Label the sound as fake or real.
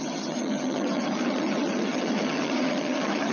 fake